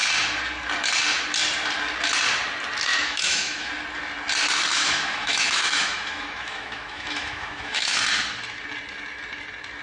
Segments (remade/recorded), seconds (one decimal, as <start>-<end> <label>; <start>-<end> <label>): 0.0-2.9 recorded; 2.9-3.7 remade; 3.7-4.7 recorded; 4.7-8.0 remade; 8.0-9.8 recorded